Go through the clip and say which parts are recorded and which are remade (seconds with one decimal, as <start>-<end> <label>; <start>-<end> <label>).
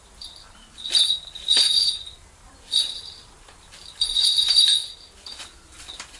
0.0-6.2 remade